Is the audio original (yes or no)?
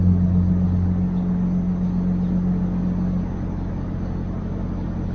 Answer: yes